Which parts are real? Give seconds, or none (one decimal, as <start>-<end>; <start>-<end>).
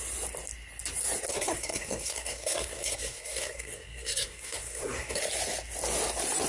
0.0-1.3; 5.2-6.5